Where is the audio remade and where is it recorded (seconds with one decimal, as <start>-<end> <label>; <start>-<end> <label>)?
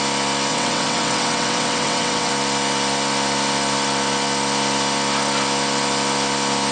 0.0-0.5 recorded; 0.5-2.3 remade; 2.3-6.7 recorded